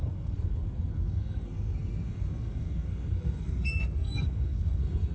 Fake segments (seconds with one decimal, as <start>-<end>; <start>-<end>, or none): 0.0-5.1